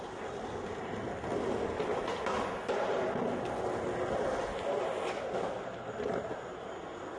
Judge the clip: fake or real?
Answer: real